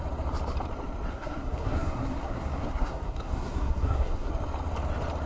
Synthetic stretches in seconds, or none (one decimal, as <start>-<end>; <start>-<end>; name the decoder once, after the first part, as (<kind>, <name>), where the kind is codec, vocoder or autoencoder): 1.1-4.3 (codec, SNAC)